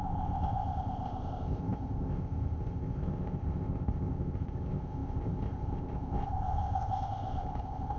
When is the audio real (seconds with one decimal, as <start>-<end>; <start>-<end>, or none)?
none